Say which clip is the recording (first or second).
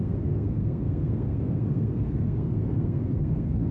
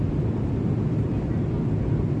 second